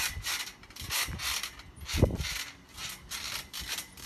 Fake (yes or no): yes